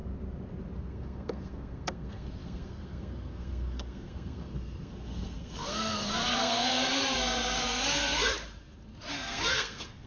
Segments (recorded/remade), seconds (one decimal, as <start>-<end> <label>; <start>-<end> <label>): 0.0-0.8 recorded; 0.8-8.3 remade; 8.3-9.1 recorded; 9.1-10.1 remade